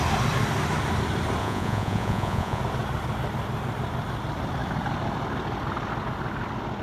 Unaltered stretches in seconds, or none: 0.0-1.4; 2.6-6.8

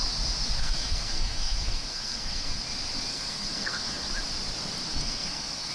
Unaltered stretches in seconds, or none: 0.0-0.6; 2.6-3.1; 4.1-4.9

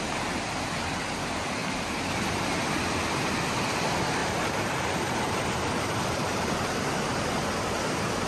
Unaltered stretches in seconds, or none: 0.0-1.6; 2.7-4.2; 6.5-8.3